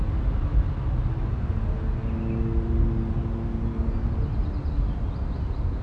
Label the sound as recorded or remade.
recorded